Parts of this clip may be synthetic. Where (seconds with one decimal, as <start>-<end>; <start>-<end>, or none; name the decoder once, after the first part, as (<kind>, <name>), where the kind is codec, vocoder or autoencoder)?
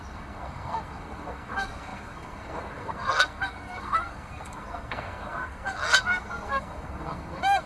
0.0-7.7 (codec, SNAC)